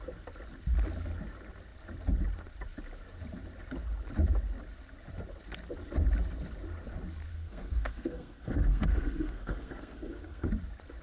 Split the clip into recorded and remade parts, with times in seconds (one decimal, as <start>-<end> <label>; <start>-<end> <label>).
0.0-7.3 recorded; 7.3-10.5 remade; 10.5-11.0 recorded